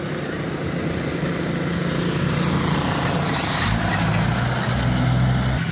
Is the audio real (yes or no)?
yes